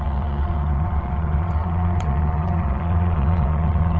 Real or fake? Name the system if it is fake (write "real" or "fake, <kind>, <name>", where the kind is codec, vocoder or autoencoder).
fake, vocoder, Vocos